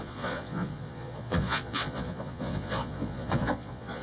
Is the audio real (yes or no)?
no